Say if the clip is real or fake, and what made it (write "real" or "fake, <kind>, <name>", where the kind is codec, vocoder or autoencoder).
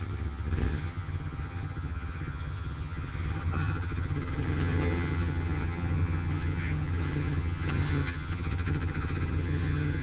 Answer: fake, vocoder, HiFi-GAN